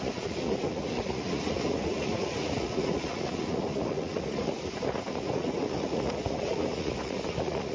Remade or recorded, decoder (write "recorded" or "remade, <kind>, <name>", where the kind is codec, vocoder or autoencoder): remade, vocoder, Vocos